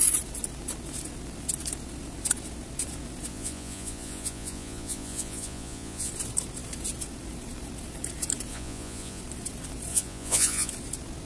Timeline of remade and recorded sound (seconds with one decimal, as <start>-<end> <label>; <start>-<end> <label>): 0.0-3.3 recorded; 3.3-6.1 remade; 6.1-8.5 recorded; 8.5-9.2 remade; 9.2-9.9 recorded; 9.9-10.7 remade; 10.7-11.3 recorded